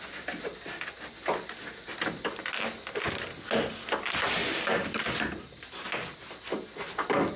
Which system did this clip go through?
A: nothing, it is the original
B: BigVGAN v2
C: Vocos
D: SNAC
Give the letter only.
A